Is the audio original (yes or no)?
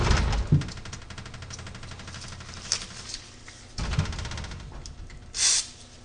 yes